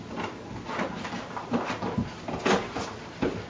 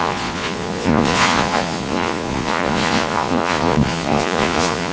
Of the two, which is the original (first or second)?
first